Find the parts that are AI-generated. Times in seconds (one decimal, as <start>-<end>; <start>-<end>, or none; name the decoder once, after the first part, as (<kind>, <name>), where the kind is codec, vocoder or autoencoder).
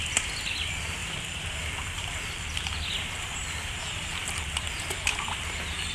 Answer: 1.0-2.9 (vocoder, BigVGAN v2); 3.4-4.6